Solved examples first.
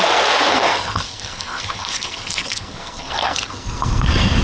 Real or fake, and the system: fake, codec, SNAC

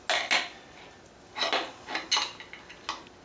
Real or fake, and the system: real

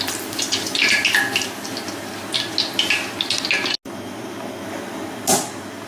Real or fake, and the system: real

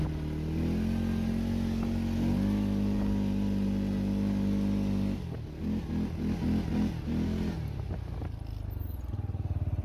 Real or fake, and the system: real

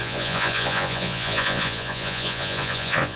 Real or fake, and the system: fake, vocoder, Vocos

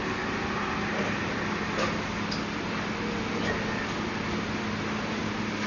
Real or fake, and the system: real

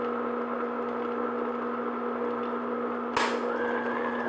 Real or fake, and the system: real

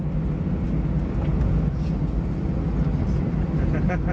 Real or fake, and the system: real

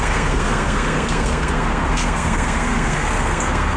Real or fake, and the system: fake, codec, SNAC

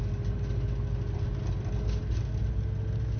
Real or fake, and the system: real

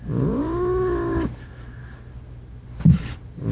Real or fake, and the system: real